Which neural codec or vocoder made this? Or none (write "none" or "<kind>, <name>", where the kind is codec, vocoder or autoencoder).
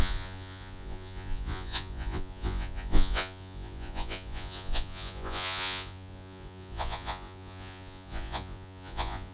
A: vocoder, Vocos